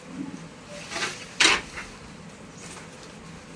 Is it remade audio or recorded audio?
recorded